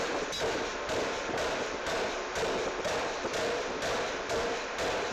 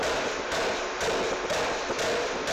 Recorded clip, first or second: second